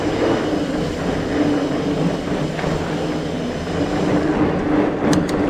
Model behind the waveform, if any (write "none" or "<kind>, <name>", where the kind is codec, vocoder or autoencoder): none